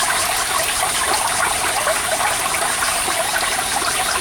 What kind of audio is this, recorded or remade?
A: recorded